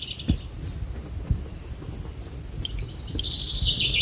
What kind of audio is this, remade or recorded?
recorded